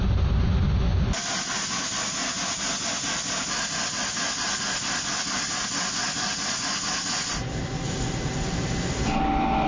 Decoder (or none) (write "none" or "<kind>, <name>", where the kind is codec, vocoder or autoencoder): none